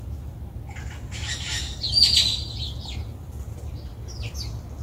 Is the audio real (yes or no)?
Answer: yes